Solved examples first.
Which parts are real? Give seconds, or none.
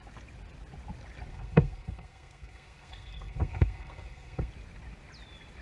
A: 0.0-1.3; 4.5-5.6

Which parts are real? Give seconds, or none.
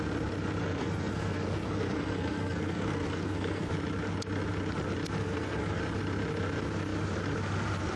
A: 0.0-0.6; 3.7-5.2; 5.8-8.0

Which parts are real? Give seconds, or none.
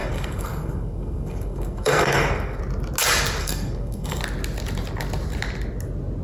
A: 2.6-3.4; 4.2-6.2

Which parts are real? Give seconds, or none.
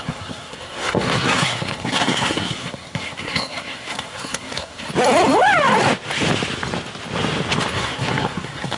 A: 4.9-7.7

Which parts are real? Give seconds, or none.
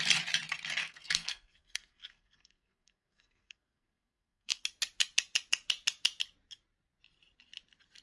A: 0.0-0.8; 4.6-8.0